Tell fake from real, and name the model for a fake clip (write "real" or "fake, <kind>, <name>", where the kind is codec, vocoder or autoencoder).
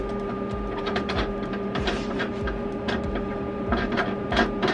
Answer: fake, vocoder, BigVGAN v2